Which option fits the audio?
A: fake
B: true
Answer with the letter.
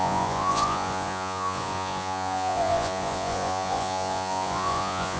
A